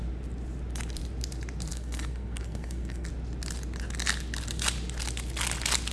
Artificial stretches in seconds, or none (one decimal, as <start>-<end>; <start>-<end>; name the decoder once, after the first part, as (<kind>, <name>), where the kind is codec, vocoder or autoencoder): 1.7-3.1 (codec, SNAC)